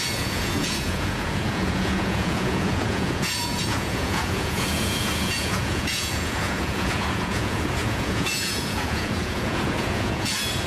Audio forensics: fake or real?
fake